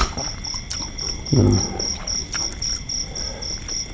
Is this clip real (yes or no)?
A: yes